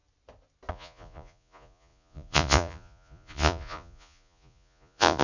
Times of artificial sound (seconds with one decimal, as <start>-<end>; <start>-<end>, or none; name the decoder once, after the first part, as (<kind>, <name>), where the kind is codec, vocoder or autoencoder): 0.7-5.2 (vocoder, Vocos)